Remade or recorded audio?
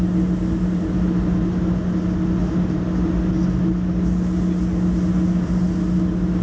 recorded